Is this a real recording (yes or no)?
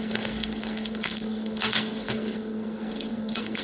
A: no